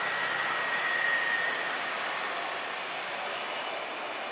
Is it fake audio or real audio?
real